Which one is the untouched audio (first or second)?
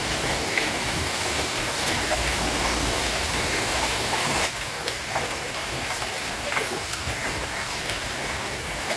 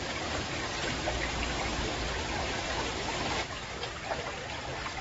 second